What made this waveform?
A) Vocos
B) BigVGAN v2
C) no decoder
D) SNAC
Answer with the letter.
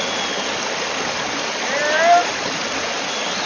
C